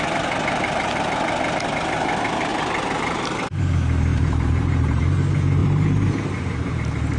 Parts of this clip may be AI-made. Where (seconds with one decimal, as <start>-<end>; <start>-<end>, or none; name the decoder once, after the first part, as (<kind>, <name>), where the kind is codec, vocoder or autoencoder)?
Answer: 4.1-5.0 (vocoder, BigVGAN v2); 5.6-6.8